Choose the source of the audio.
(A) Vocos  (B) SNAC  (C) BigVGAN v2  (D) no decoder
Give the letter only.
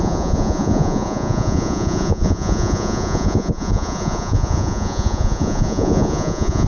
A